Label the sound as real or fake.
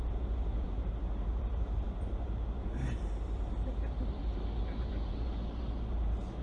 fake